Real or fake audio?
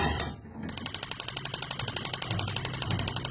real